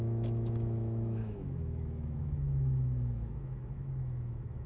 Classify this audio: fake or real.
fake